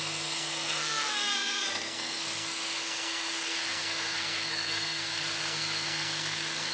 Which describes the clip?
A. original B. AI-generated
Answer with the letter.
B